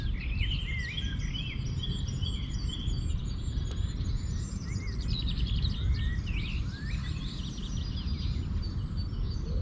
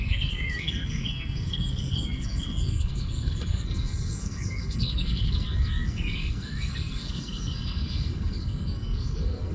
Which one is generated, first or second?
second